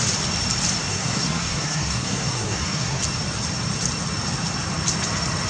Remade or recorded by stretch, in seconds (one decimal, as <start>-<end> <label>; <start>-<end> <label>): 0.0-0.9 recorded; 0.9-3.0 remade; 3.0-5.5 recorded